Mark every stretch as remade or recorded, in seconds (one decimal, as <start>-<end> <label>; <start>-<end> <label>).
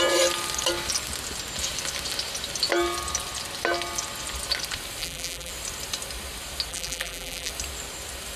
0.0-5.0 recorded; 5.0-5.5 remade; 5.5-6.7 recorded; 6.7-7.5 remade; 7.5-8.4 recorded